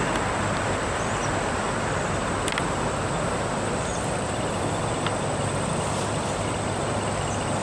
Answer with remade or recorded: recorded